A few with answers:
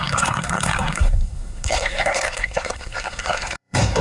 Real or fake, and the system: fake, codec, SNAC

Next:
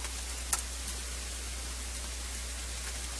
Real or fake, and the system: real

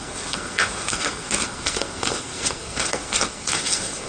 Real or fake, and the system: fake, codec, SNAC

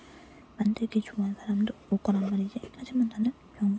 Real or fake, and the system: real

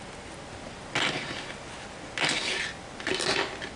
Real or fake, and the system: real